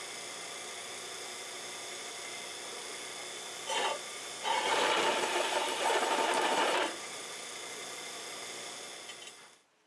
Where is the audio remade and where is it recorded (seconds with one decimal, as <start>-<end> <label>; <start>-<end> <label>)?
0.0-4.1 recorded; 4.1-7.3 remade; 7.3-9.9 recorded